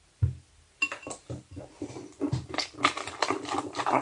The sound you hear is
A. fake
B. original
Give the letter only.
B